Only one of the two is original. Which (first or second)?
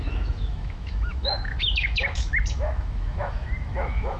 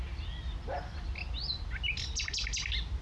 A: second